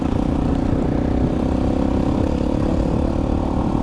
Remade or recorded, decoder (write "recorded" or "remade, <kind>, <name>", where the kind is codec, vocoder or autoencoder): recorded